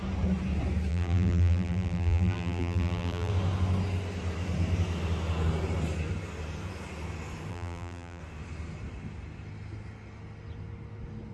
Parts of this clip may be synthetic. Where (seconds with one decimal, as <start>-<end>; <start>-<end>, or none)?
0.9-3.3; 7.5-8.2